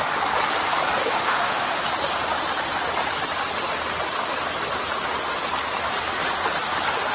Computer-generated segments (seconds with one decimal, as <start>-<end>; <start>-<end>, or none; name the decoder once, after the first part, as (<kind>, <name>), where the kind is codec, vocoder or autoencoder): 1.0-1.8 (autoencoder, DAC-VAE)